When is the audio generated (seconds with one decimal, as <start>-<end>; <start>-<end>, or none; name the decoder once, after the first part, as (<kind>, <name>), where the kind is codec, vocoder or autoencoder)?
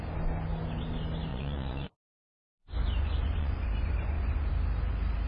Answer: 1.3-4.5 (vocoder, Vocos)